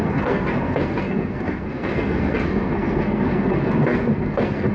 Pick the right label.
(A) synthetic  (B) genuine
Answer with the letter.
A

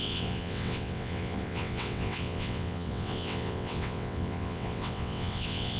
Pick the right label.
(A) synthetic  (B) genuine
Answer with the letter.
A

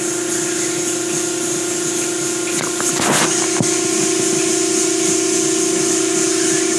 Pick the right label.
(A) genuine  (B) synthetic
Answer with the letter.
A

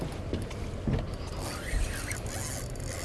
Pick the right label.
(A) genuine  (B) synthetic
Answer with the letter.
A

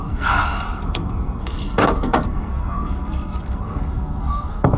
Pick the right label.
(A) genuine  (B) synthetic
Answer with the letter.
B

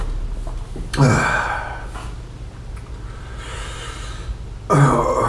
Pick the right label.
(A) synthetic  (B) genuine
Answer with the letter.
B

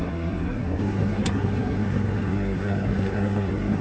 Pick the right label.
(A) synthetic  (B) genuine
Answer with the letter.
A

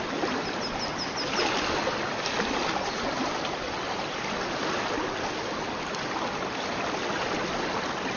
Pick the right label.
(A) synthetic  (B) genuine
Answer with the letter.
B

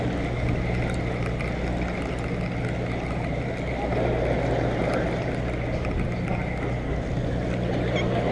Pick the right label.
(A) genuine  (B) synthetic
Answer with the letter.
A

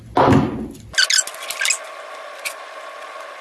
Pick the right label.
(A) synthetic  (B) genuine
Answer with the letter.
B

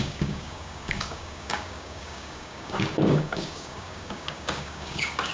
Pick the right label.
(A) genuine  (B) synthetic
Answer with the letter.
B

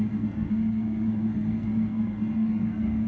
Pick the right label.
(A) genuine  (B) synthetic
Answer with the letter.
B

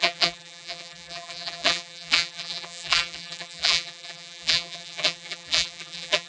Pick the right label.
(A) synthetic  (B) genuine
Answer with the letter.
A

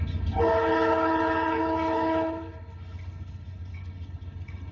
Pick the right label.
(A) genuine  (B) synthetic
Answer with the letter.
B